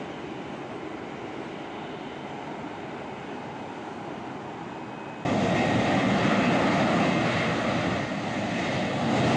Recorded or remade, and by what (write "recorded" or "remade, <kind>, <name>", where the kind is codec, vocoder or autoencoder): recorded